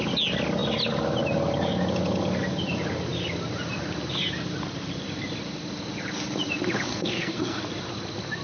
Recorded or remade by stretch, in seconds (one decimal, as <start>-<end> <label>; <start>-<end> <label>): 0.0-6.9 recorded; 6.9-7.6 remade; 7.6-8.4 recorded